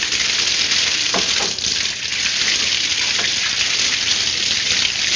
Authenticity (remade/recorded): recorded